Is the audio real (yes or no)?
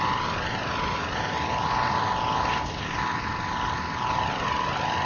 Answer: yes